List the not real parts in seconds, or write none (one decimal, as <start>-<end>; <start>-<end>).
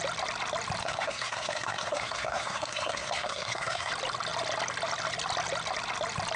0.8-3.9